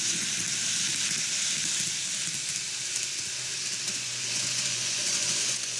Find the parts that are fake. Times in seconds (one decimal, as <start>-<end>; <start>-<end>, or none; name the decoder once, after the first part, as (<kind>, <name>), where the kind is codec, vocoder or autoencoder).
0.0-0.4 (vocoder, Vocos); 3.9-5.8